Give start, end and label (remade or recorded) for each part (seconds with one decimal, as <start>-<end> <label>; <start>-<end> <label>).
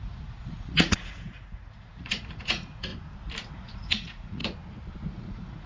0.0-2.9 remade; 2.9-3.5 recorded; 3.5-4.4 remade; 4.4-5.1 recorded; 5.1-5.7 remade